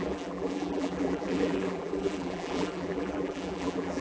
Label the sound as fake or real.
fake